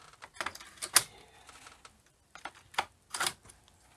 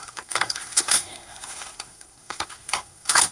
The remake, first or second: second